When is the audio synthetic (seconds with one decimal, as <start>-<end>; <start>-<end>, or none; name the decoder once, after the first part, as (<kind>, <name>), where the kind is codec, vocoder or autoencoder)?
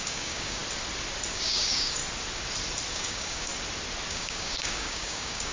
0.0-0.6 (codec, DAC); 1.3-2.0; 2.9-3.5; 4.1-5.5